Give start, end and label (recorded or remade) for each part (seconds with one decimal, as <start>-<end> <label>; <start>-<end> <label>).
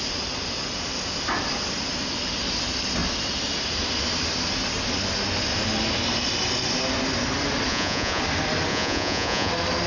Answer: 0.0-7.7 recorded; 7.7-8.2 remade; 8.2-8.7 recorded; 8.7-9.5 remade; 9.5-9.9 recorded